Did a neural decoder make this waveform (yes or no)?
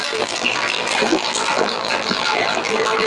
yes